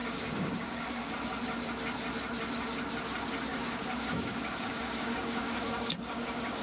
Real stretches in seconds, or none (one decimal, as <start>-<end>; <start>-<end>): 1.1-3.5